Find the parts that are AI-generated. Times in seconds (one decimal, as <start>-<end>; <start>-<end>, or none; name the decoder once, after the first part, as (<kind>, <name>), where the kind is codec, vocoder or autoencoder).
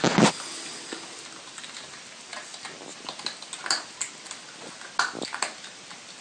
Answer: none